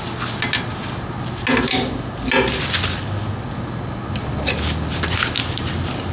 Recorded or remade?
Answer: recorded